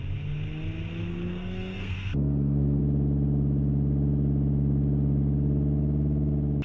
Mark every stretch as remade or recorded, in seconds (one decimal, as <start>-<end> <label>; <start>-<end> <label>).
0.0-1.1 recorded; 1.1-2.8 remade; 2.8-6.6 recorded